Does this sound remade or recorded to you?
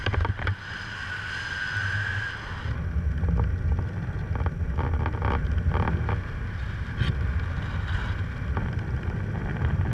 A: recorded